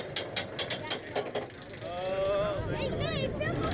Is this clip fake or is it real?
real